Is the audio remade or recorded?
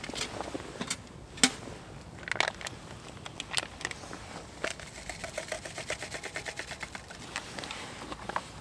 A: recorded